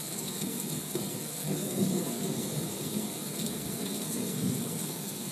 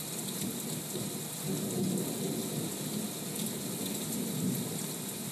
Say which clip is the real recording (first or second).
second